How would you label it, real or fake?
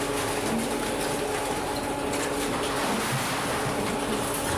real